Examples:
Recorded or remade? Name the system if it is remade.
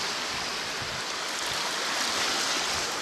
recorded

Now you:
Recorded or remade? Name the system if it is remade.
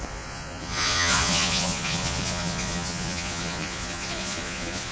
remade, vocoder, Vocos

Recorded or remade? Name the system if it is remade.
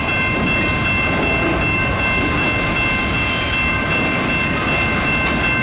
recorded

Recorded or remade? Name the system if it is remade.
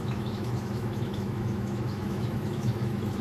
remade, autoencoder, DAC-VAE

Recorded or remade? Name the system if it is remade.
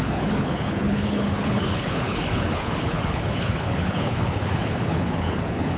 remade, codec, HILCodec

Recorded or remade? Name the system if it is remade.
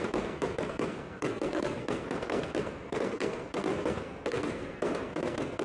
remade, codec, SNAC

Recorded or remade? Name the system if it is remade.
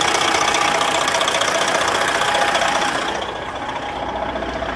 recorded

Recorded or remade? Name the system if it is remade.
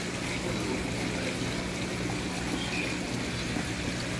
recorded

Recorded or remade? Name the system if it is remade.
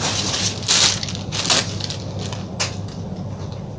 recorded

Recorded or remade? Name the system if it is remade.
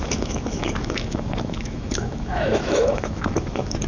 remade, autoencoder, DAC-VAE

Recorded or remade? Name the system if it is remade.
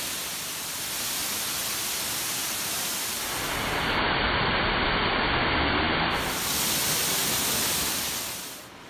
recorded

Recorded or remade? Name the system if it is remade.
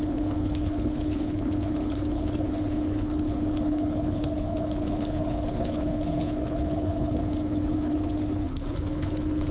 remade, codec, HILCodec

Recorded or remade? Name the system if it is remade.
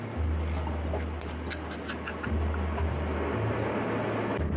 recorded